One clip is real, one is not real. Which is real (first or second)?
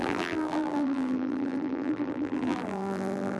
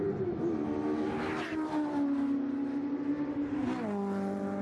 second